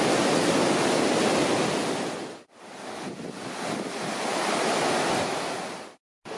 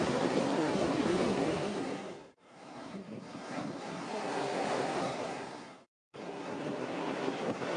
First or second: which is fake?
second